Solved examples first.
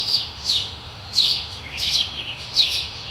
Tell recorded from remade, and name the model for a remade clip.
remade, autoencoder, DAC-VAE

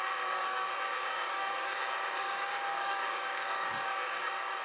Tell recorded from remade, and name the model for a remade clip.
remade, codec, DAC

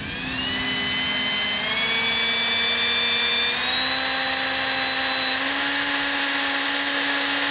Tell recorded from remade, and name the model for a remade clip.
recorded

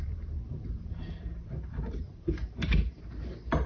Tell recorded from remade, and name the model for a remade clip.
remade, vocoder, BigVGAN v2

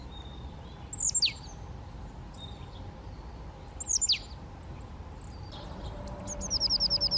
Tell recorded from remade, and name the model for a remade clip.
recorded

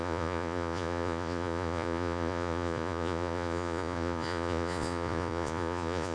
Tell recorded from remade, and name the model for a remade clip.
remade, vocoder, Vocos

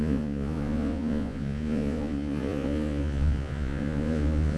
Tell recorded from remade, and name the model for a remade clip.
remade, vocoder, Vocos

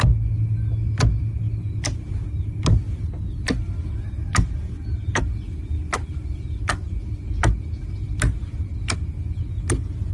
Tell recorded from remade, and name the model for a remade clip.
recorded